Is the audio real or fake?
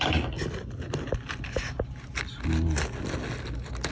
real